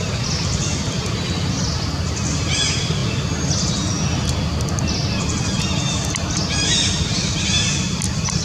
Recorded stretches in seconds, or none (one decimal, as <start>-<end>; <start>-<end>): 0.0-8.4